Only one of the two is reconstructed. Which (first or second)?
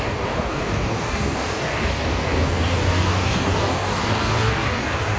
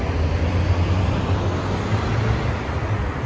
first